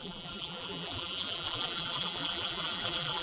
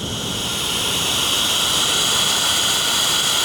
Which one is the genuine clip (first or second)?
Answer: second